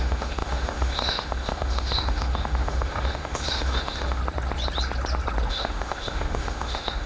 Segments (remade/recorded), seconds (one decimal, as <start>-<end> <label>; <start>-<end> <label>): 0.0-4.2 remade; 4.2-5.5 recorded; 5.5-7.1 remade